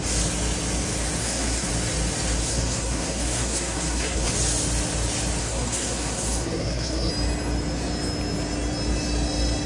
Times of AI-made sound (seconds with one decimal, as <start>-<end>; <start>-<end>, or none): 1.2-1.7; 2.4-4.3; 5.4-7.1